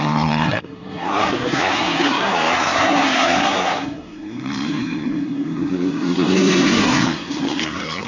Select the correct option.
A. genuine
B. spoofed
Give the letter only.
B